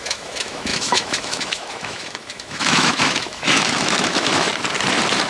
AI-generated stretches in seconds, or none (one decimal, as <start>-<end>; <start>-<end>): 0.0-4.5